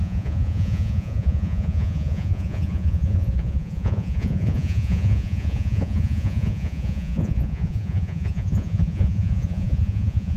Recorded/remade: remade